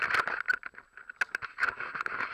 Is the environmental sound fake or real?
real